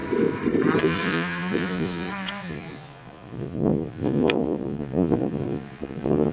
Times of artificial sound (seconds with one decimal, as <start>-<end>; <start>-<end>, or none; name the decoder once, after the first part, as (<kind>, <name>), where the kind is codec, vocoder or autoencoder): 0.8-6.3 (vocoder, Vocos)

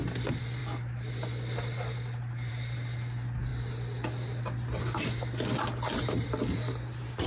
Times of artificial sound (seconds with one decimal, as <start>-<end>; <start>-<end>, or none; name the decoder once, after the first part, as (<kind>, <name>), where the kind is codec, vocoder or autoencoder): none